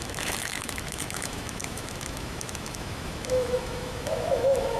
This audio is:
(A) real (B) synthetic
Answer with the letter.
B